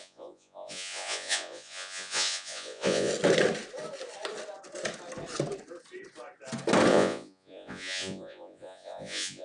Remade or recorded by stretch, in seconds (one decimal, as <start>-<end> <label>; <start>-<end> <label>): 0.0-3.1 remade; 3.1-6.9 recorded; 6.9-9.4 remade